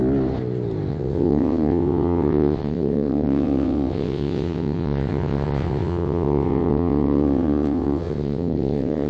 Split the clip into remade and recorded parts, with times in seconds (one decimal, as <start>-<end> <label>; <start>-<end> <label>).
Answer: 0.0-0.9 recorded; 0.9-9.1 remade